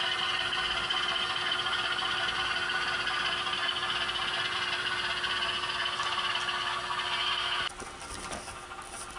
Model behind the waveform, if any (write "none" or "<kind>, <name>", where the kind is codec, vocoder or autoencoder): none